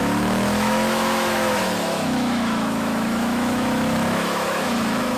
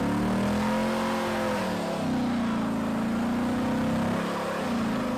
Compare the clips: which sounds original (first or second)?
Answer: second